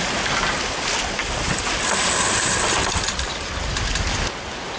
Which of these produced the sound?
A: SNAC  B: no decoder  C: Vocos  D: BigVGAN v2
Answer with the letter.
B